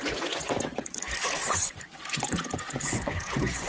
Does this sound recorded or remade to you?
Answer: remade